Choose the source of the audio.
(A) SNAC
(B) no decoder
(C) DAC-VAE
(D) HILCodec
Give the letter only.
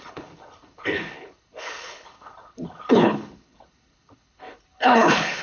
D